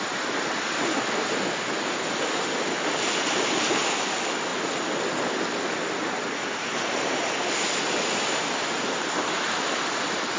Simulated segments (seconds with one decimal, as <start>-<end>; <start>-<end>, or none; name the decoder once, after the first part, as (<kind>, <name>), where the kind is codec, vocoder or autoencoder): none